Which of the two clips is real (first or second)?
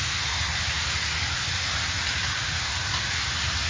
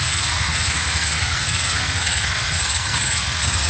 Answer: first